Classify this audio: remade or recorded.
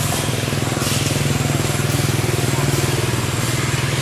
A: recorded